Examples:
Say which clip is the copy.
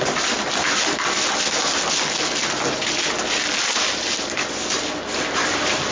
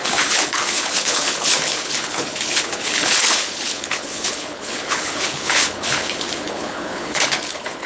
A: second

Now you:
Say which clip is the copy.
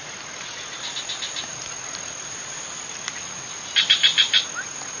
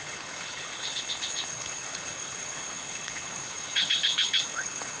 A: second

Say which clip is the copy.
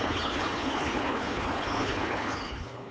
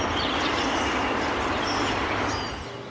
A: first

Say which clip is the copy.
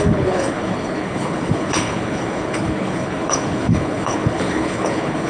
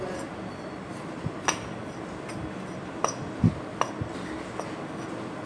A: first